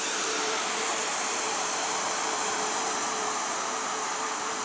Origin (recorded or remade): remade